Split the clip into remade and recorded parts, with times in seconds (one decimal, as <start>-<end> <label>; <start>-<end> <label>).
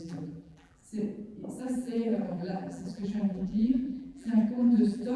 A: 0.0-0.8 remade; 0.8-1.6 recorded; 1.6-5.2 remade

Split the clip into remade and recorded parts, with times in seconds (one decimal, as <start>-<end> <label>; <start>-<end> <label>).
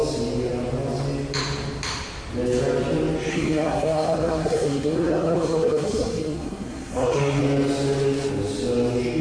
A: 0.0-3.3 recorded; 3.3-7.4 remade; 7.4-9.2 recorded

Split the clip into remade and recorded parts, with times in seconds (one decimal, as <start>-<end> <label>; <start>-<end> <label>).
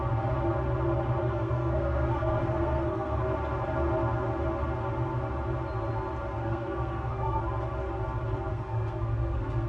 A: 0.0-1.2 recorded; 1.2-3.2 remade; 3.2-6.4 recorded; 6.4-7.4 remade; 7.4-8.5 recorded; 8.5-9.7 remade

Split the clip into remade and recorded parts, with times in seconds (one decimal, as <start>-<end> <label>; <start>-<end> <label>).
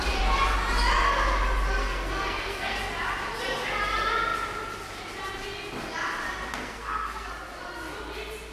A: 0.0-1.8 recorded; 1.8-2.8 remade; 2.8-6.5 recorded; 6.5-7.3 remade; 7.3-8.5 recorded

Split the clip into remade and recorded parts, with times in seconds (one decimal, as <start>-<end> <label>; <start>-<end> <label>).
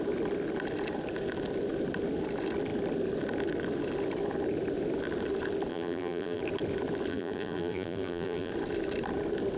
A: 0.0-5.7 recorded; 5.7-6.4 remade; 6.4-7.1 recorded; 7.1-8.5 remade; 8.5-9.6 recorded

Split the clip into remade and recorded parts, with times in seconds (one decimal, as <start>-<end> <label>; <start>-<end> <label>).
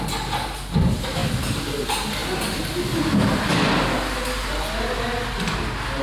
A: 0.0-2.2 recorded; 2.2-3.7 remade; 3.7-6.0 recorded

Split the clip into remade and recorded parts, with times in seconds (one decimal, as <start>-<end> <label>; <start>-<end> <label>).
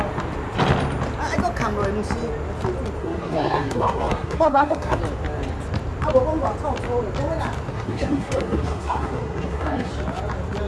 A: 0.0-3.0 recorded; 3.0-5.0 remade; 5.0-7.7 recorded; 7.7-9.9 remade; 9.9-10.7 recorded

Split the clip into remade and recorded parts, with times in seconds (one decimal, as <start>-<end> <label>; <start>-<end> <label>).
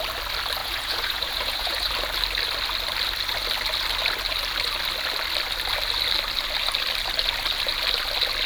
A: 0.0-0.6 recorded; 0.6-1.9 remade; 1.9-8.5 recorded